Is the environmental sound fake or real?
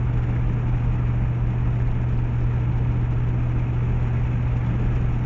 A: real